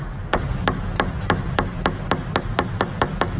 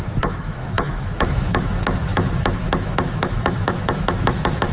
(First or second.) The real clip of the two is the first